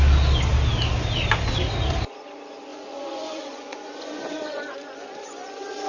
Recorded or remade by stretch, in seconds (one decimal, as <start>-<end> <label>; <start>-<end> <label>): 0.0-2.7 recorded; 2.7-5.9 remade